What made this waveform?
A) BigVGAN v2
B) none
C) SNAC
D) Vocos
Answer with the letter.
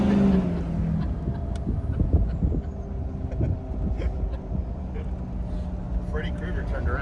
B